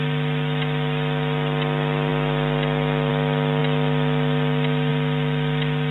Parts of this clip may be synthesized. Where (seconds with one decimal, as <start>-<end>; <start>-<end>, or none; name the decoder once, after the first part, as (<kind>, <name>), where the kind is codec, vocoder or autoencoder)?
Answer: none